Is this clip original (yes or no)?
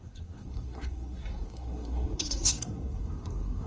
no